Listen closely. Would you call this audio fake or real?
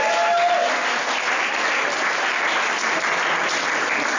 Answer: real